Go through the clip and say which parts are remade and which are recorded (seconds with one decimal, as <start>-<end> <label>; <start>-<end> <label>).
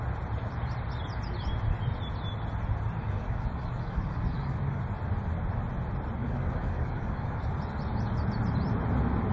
0.0-3.0 recorded; 3.0-4.8 remade; 4.8-6.2 recorded; 6.2-7.5 remade; 7.5-9.3 recorded